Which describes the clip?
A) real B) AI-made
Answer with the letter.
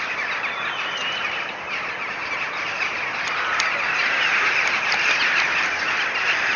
A